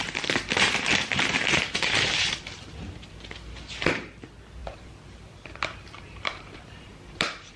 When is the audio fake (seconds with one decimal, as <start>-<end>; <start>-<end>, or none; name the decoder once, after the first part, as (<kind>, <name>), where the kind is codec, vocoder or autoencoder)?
0.0-2.9 (vocoder, BigVGAN v2); 4.6-7.6